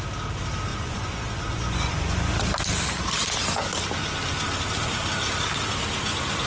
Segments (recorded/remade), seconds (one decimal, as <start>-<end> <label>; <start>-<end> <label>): 0.0-0.7 recorded; 0.7-2.3 remade; 2.3-6.5 recorded